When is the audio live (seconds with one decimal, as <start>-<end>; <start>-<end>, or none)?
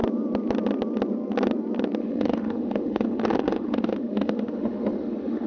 0.0-2.0